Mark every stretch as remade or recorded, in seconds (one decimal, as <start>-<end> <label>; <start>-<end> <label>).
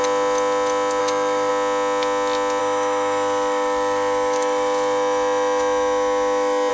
0.0-1.0 recorded; 1.0-1.5 remade; 1.5-2.6 recorded; 2.6-6.7 remade